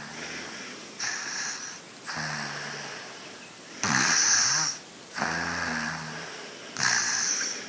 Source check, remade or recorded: recorded